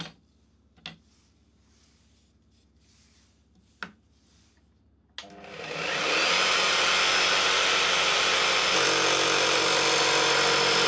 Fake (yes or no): no